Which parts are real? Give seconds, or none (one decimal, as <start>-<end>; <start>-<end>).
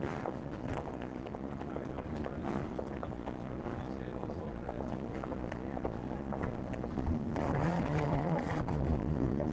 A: none